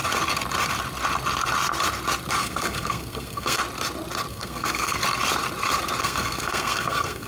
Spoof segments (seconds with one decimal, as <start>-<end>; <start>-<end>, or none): 2.4-3.6; 4.3-5.0; 6.0-7.3